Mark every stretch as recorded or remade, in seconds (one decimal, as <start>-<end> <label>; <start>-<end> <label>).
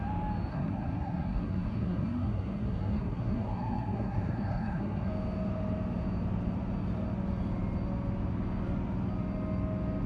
0.0-0.5 recorded; 0.5-5.1 remade; 5.1-10.1 recorded